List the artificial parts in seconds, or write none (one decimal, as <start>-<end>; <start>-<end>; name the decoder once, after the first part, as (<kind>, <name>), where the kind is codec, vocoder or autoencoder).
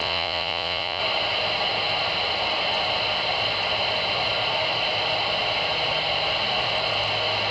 0.0-1.0 (vocoder, Vocos)